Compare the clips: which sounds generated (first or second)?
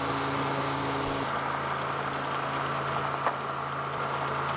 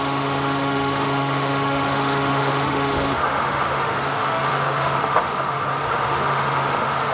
second